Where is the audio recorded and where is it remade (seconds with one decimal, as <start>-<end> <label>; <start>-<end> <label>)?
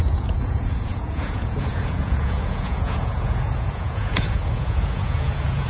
0.0-5.7 remade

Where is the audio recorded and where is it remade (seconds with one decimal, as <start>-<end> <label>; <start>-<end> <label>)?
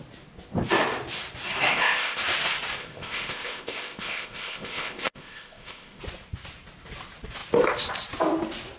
0.0-1.7 recorded; 1.7-2.2 remade; 2.2-2.8 recorded; 2.8-6.0 remade; 6.0-8.8 recorded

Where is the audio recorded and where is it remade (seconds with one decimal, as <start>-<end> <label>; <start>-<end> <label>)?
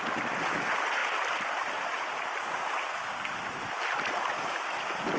0.0-5.2 recorded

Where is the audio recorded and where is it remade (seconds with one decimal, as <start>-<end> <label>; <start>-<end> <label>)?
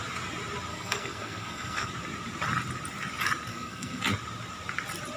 0.0-0.7 recorded; 0.7-1.9 remade; 1.9-3.5 recorded; 3.5-4.0 remade; 4.0-5.2 recorded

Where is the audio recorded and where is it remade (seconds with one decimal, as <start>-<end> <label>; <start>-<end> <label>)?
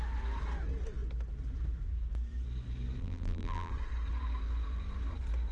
0.0-3.0 recorded; 3.0-3.7 remade; 3.7-5.5 recorded